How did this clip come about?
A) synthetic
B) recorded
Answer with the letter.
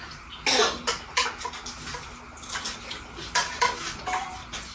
B